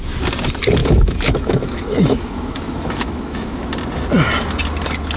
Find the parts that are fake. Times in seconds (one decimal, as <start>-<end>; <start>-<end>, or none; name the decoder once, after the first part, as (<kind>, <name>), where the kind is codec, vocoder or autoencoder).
0.8-3.7 (autoencoder, DAC-VAE)

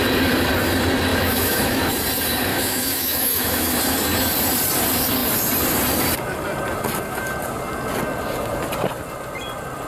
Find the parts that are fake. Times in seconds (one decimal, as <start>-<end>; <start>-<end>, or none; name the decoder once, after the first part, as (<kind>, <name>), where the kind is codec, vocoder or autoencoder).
1.1-1.9 (autoencoder, DAC-VAE); 2.5-3.8

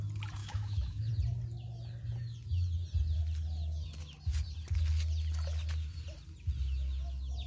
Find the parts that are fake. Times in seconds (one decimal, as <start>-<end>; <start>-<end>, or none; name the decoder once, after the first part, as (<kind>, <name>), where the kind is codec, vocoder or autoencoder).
0.4-1.1 (autoencoder, DAC-VAE)

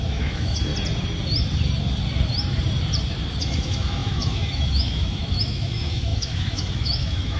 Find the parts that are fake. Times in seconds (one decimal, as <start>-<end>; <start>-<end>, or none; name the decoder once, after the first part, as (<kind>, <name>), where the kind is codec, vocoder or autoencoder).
0.0-0.7 (autoencoder, DAC-VAE); 3.4-7.4